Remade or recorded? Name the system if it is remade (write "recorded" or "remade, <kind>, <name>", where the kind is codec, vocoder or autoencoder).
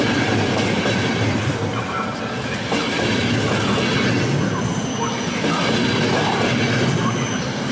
recorded